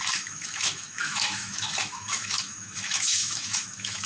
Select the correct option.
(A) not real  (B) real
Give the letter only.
A